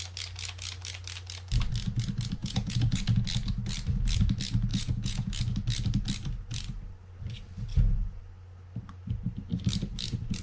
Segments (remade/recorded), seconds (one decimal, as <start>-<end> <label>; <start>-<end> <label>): 0.0-2.4 recorded; 2.4-3.0 remade; 3.0-4.7 recorded; 4.7-5.3 remade; 5.3-7.7 recorded; 7.7-8.2 remade; 8.2-10.4 recorded